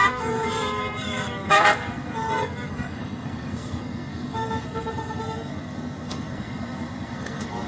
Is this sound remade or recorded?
remade